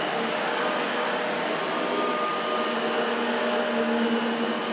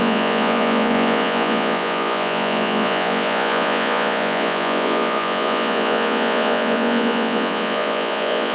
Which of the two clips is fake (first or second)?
second